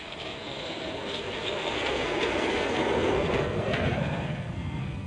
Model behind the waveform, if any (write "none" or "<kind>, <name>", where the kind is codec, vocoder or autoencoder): codec, SNAC